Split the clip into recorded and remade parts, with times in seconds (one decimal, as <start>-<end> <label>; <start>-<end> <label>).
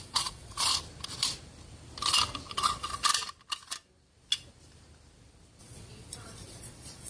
0.0-0.7 remade; 0.7-2.5 recorded; 2.5-3.1 remade; 3.1-5.6 recorded; 5.6-7.1 remade